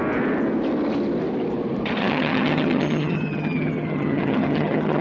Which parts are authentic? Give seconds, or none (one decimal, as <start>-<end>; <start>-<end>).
0.0-2.0